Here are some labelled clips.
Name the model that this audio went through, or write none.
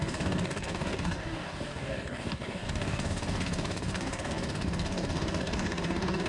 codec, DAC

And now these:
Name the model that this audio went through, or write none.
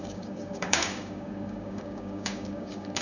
codec, DAC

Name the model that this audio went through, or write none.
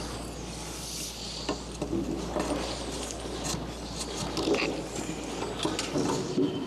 none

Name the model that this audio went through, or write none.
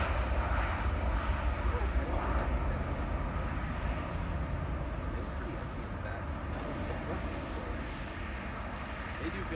none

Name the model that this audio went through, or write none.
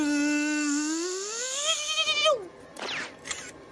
none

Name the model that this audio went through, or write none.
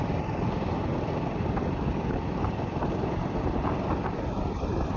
none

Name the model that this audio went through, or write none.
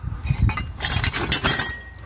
none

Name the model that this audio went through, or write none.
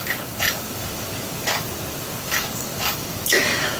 codec, DAC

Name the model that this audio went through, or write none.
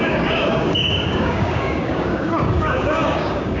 codec, DAC